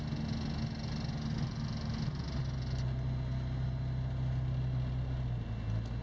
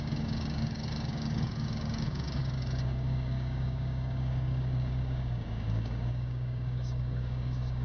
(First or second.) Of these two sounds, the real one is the first